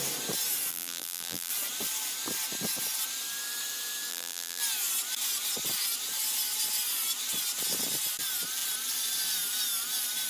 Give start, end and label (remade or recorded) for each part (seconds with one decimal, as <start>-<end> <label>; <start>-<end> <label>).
0.0-0.7 recorded; 0.7-1.5 remade; 1.5-4.1 recorded; 4.1-4.6 remade; 4.6-10.3 recorded